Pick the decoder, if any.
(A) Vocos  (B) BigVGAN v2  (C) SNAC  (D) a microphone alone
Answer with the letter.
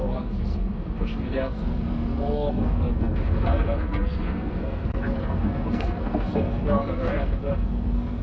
C